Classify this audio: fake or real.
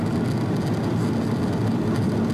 real